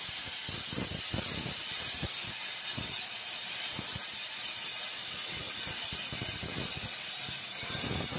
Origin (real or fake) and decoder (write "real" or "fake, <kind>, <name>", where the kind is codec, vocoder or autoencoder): real